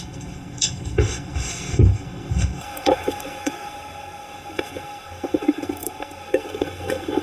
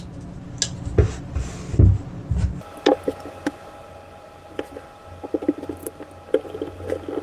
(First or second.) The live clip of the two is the second